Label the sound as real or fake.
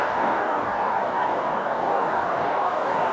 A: fake